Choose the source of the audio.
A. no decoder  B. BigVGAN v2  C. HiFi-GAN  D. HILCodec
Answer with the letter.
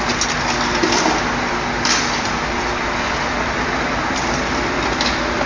A